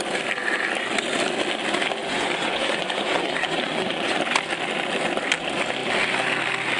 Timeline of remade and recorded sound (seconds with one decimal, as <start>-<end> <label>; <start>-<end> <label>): 0.0-2.0 recorded; 2.0-4.2 remade; 4.2-6.8 recorded